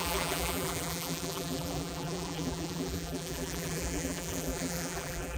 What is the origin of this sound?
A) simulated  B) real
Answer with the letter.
A